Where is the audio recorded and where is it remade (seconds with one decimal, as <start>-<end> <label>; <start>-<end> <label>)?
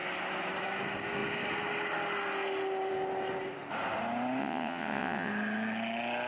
0.0-4.4 recorded; 4.4-5.3 remade; 5.3-6.3 recorded